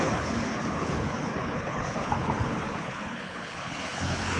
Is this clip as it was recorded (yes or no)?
no